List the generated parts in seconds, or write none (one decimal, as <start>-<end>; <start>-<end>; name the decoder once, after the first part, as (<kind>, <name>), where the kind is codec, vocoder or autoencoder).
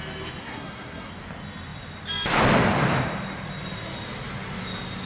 0.4-1.1 (codec, SNAC)